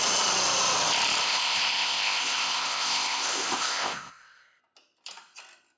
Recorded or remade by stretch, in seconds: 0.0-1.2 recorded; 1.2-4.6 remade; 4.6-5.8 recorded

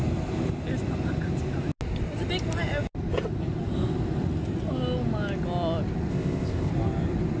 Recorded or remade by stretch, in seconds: 0.0-6.1 recorded; 6.1-6.7 remade; 6.7-7.4 recorded

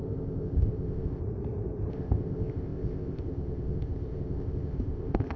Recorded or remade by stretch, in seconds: 0.0-1.2 remade; 1.2-1.9 recorded; 1.9-5.4 remade

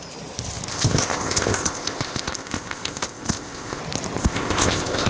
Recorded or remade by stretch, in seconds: 0.0-0.7 recorded; 0.7-3.8 remade; 3.8-4.2 recorded; 4.2-5.1 remade

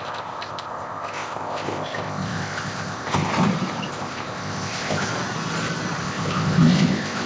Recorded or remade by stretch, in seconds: 0.0-3.3 remade; 3.3-3.9 recorded; 3.9-5.1 remade; 5.1-6.0 recorded; 6.0-7.3 remade